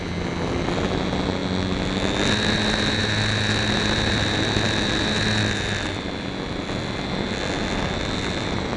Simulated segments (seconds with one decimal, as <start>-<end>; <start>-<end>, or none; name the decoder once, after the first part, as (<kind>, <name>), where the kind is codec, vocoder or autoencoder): none